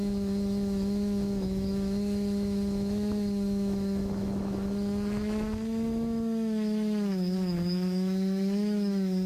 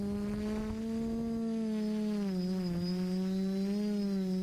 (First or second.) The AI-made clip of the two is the first